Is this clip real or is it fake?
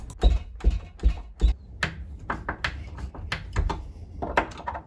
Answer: real